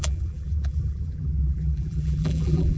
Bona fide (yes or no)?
no